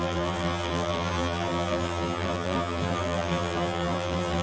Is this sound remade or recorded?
remade